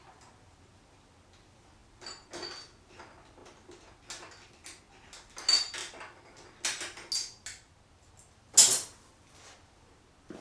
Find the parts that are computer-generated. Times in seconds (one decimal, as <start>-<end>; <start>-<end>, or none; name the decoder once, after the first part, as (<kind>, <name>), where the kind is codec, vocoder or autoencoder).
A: none